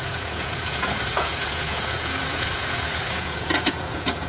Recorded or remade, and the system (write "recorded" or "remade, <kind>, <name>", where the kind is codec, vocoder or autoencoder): remade, vocoder, Vocos